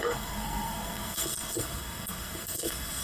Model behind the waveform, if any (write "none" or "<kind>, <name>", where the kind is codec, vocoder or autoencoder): codec, SNAC